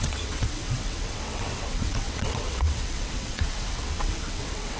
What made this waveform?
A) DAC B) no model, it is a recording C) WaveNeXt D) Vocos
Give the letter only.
C